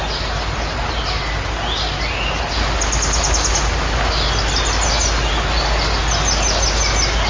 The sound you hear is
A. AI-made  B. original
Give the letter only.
B